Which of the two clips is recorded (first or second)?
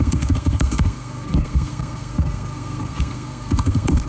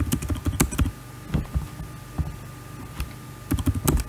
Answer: second